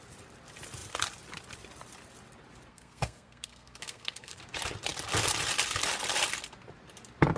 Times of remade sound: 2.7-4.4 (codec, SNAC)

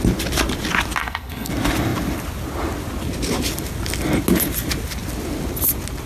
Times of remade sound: 1.0-1.5 (codec, SNAC)

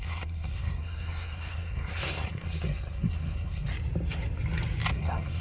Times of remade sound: 0.0-3.7 (codec, SNAC); 4.9-5.4

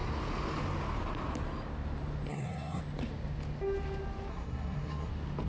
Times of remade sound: 2.3-2.8 (codec, SNAC); 4.3-5.1

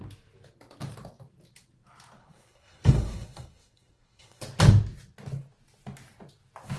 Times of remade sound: 2.2-4.4 (codec, SNAC)

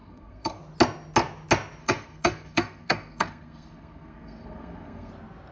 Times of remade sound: 0.0-0.6 (codec, SNAC); 1.8-5.1

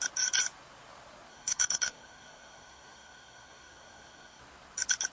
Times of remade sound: 1.3-4.4 (codec, SNAC)